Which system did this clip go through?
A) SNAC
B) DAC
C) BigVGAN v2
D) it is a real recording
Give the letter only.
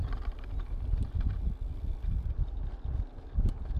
D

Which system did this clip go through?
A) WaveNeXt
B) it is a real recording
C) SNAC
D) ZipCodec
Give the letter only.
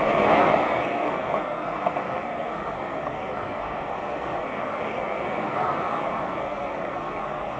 C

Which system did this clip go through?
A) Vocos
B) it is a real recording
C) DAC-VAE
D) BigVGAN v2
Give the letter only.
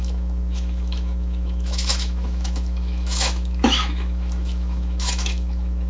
C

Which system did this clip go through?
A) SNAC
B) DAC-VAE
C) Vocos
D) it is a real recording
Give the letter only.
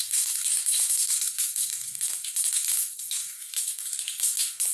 A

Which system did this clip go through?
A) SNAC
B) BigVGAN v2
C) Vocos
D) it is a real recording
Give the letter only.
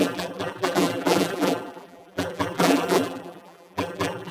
B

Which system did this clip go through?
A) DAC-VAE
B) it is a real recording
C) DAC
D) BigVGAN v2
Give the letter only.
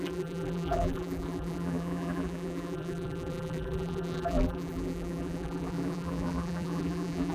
D